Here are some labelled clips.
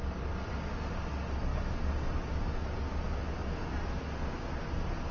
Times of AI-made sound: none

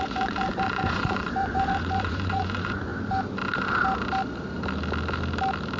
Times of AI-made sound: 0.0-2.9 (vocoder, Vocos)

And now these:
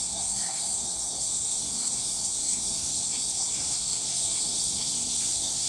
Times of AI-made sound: 0.0-5.7 (codec, SNAC)